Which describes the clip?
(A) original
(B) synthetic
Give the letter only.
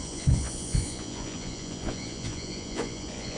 B